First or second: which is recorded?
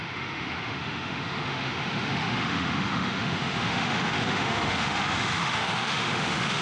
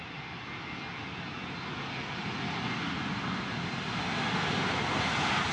second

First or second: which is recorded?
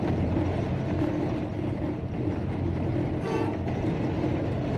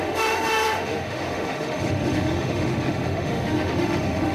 first